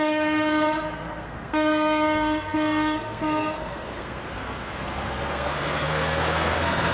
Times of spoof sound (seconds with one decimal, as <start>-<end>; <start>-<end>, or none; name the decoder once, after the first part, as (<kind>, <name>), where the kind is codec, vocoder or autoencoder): 0.0-6.9 (codec, SNAC)